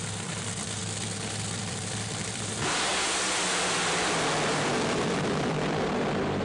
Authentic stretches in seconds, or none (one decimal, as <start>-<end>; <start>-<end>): 0.8-1.6; 2.9-4.5